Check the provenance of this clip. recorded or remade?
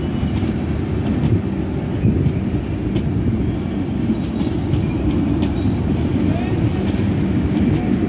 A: recorded